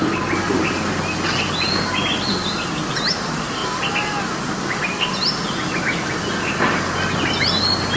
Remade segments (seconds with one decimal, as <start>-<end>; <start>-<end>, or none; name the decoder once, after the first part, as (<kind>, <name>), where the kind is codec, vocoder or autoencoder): none